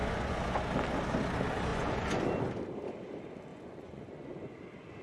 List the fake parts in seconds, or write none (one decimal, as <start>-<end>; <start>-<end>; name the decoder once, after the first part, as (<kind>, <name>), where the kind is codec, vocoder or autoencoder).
0.0-0.6 (vocoder, Vocos); 1.7-2.2; 3.5-4.6